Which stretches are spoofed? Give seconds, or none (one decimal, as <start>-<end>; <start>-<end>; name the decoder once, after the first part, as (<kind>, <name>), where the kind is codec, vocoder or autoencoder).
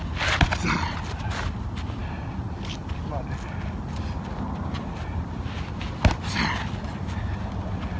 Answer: none